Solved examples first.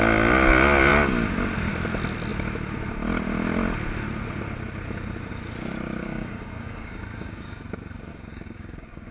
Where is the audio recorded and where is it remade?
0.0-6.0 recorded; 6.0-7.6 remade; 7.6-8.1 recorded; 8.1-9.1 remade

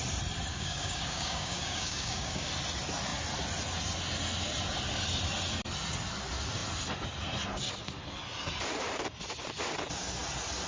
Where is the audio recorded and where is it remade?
0.0-0.5 recorded; 0.5-2.5 remade; 2.5-10.7 recorded

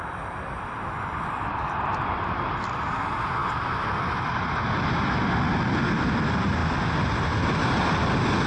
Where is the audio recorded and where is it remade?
0.0-8.5 recorded

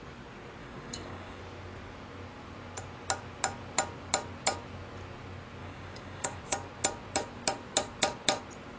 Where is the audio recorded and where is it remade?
0.0-0.6 recorded; 0.6-1.4 remade; 1.4-5.6 recorded; 5.6-6.4 remade; 6.4-8.8 recorded

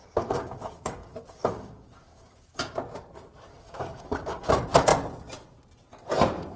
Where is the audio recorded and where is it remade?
0.0-2.6 remade; 2.6-3.5 recorded; 3.5-4.5 remade; 4.5-6.6 recorded

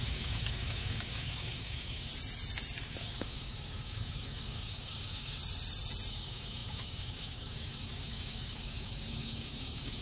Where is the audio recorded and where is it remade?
0.0-2.1 remade; 2.1-2.8 recorded; 2.8-5.4 remade; 5.4-6.1 recorded; 6.1-10.0 remade

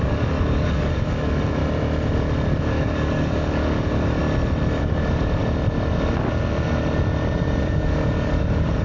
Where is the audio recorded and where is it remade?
0.0-1.6 remade; 1.6-2.6 recorded; 2.6-4.2 remade; 4.2-4.8 recorded; 4.8-5.4 remade; 5.4-7.6 recorded; 7.6-8.8 remade